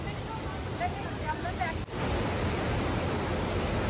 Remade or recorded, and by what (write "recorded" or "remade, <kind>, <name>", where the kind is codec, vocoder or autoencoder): recorded